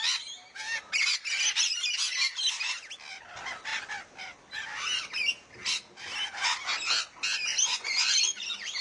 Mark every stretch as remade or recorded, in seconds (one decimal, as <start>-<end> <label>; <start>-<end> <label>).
0.0-7.5 recorded; 7.5-8.8 remade